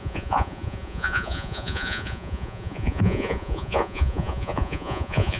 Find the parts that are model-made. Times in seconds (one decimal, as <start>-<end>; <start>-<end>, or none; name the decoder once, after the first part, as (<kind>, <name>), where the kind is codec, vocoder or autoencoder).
0.0-5.4 (vocoder, Vocos)